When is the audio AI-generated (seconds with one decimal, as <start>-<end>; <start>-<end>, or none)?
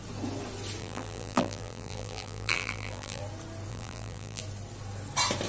0.8-3.2; 3.7-4.4